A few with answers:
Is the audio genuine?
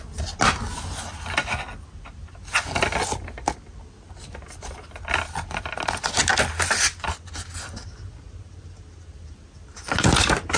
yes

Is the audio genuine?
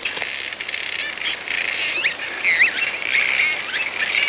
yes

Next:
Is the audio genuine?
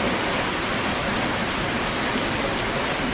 yes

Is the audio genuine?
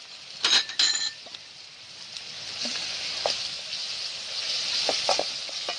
yes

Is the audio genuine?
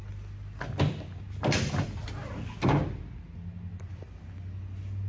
yes